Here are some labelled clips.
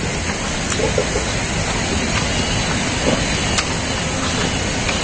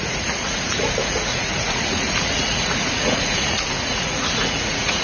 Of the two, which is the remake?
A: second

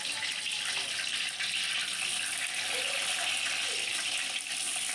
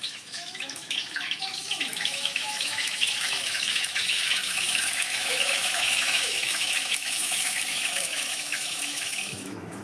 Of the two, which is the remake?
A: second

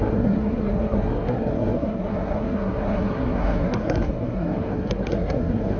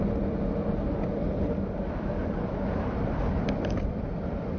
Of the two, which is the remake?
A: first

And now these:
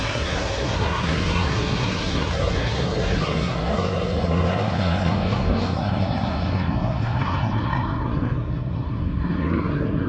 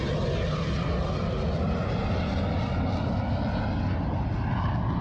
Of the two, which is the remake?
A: first